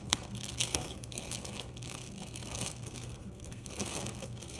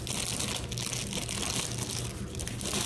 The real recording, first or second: second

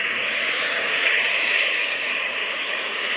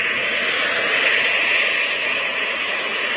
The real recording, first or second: second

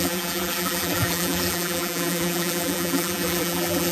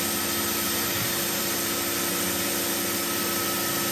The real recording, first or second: second